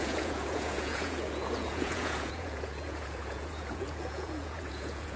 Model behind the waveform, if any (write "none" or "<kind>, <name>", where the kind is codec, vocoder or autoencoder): vocoder, Vocos